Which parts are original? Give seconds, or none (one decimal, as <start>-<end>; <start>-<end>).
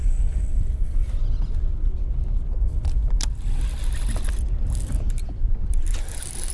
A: 0.0-6.5